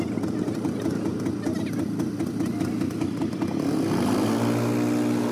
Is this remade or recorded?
recorded